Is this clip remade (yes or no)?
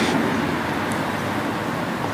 no